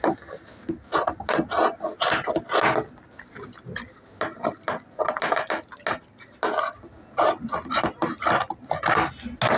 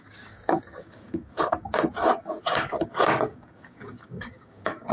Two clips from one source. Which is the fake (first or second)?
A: second